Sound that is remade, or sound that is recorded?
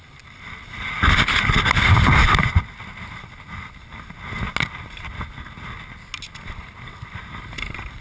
recorded